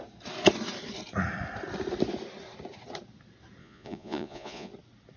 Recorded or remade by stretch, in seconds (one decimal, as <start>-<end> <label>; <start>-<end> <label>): 0.0-3.6 recorded; 3.6-4.7 remade; 4.7-5.2 recorded